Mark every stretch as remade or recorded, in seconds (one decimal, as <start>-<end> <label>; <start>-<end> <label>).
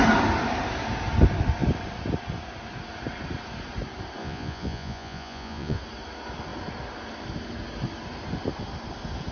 0.0-4.2 recorded; 4.2-5.8 remade; 5.8-9.3 recorded